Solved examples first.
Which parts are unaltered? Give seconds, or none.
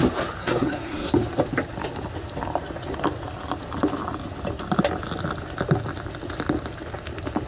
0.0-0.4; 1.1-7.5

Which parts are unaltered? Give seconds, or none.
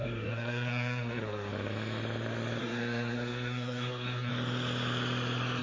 1.5-2.6; 4.3-5.6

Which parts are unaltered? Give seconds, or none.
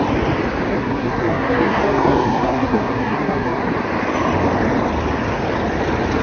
0.0-0.7; 3.6-6.2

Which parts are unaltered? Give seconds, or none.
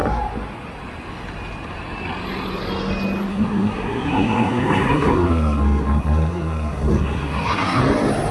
0.0-3.3; 7.8-8.3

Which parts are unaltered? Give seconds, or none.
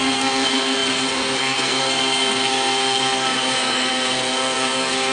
none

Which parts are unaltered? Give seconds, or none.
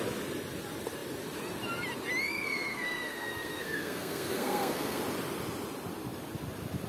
0.0-2.2; 5.0-6.9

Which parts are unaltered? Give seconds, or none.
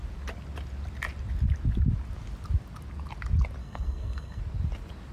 0.0-3.6; 4.4-5.1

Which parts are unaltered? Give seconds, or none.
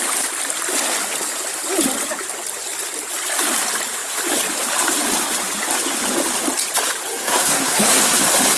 0.0-7.1; 8.2-8.6